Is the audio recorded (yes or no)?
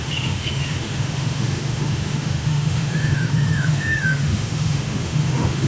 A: no